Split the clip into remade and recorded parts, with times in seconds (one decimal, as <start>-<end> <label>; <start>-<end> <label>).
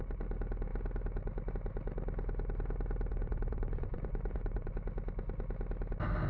0.0-3.1 recorded; 3.1-4.7 remade; 4.7-6.3 recorded